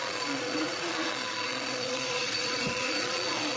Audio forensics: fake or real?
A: fake